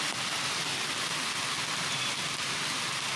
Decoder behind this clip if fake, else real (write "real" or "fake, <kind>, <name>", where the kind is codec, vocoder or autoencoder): real